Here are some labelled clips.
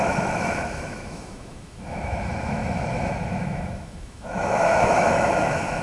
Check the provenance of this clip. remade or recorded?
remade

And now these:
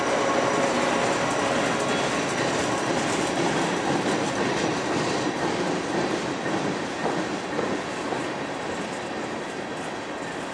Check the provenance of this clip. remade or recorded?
recorded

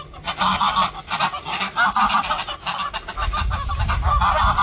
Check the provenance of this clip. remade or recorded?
recorded